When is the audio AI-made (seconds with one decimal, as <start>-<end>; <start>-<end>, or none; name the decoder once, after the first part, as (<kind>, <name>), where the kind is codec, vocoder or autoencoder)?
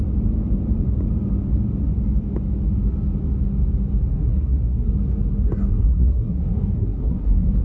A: 4.1-4.9 (codec, SNAC); 5.7-7.6